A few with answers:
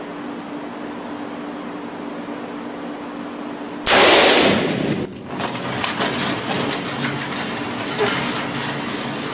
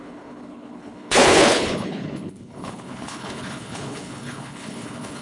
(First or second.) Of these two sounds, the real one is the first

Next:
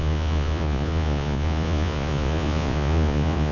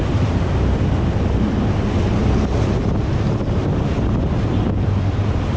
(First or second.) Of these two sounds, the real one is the second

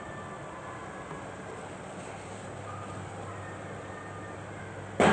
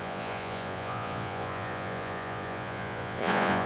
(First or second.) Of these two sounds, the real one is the first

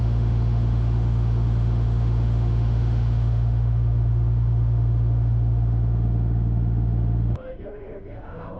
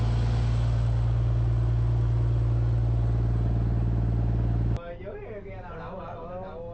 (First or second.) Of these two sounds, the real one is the second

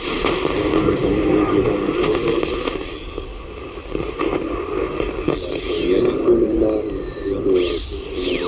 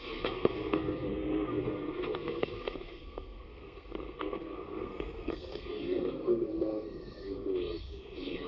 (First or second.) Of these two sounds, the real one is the first